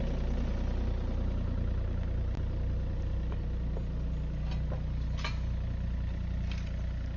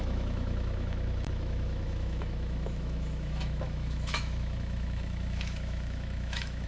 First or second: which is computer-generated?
second